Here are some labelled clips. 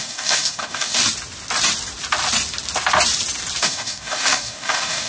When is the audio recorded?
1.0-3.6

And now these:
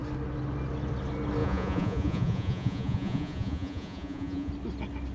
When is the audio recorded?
0.0-1.4; 4.5-5.1

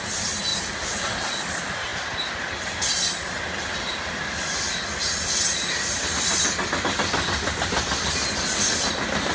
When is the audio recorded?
0.0-0.5; 1.0-9.3

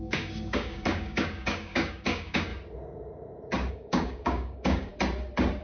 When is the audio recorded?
2.5-3.7; 4.9-5.6

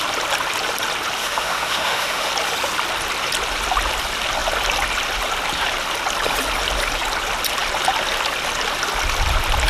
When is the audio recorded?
0.0-1.2; 2.3-9.7